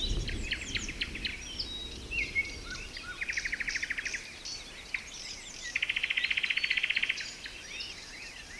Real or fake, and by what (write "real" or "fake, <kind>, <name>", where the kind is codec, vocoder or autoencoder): real